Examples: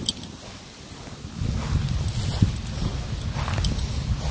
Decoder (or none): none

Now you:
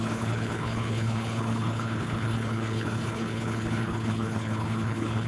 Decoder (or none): codec, HILCodec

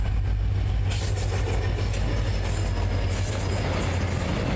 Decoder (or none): none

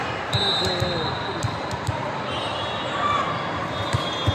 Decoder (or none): none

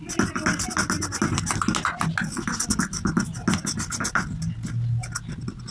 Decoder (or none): none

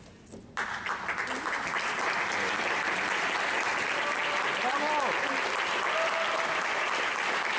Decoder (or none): none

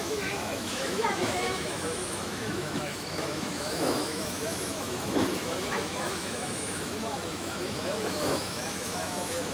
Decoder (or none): autoencoder, DAC-VAE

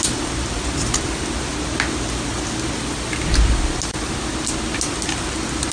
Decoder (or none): none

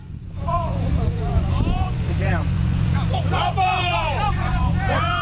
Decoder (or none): vocoder, Vocos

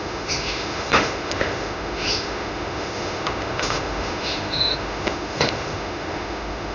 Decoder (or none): autoencoder, DAC-VAE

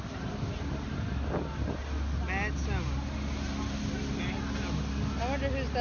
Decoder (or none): none